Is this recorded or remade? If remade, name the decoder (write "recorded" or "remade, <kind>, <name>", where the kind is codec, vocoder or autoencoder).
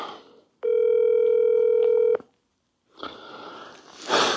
recorded